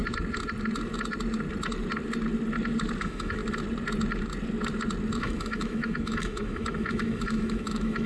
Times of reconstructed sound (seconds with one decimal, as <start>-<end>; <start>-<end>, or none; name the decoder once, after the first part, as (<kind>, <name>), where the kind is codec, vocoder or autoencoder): 3.0-3.4 (autoencoder, DAC-VAE); 5.2-8.1